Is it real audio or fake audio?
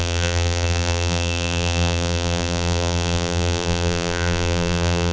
fake